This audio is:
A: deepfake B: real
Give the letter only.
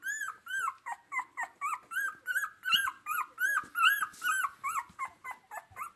B